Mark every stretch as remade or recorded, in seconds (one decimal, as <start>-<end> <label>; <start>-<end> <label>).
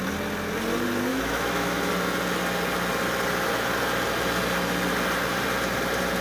0.0-1.1 recorded; 1.1-1.9 remade; 1.9-6.2 recorded